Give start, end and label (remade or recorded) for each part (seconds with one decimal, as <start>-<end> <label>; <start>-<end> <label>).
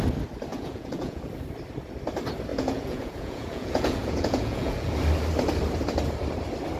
0.0-0.5 recorded; 0.5-1.2 remade; 1.2-2.5 recorded; 2.5-4.9 remade; 4.9-6.8 recorded